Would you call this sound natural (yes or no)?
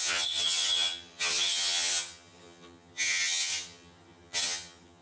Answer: no